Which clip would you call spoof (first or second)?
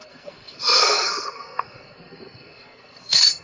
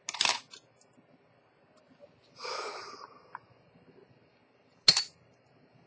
first